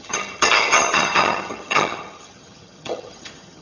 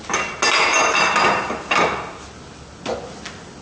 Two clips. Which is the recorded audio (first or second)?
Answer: second